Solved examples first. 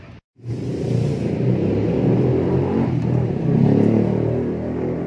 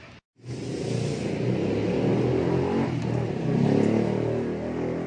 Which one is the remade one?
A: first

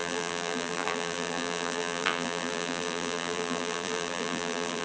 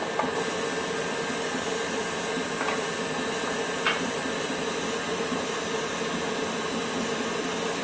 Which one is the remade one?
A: first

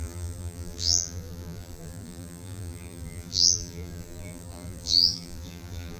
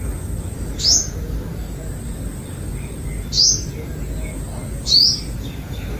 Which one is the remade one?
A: first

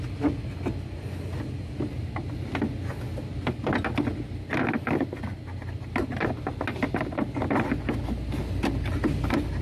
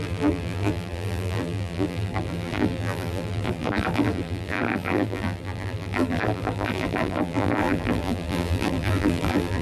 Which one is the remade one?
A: second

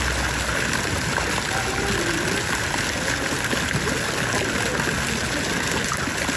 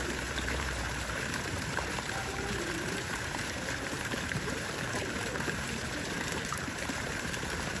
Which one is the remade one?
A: second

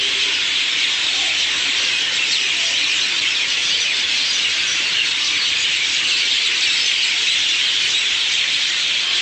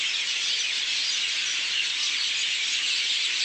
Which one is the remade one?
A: first